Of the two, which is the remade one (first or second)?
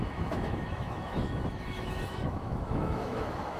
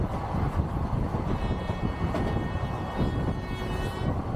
first